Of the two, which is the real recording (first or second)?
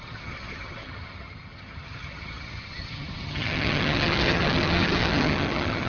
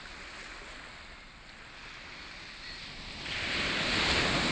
second